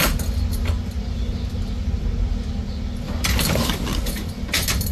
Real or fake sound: real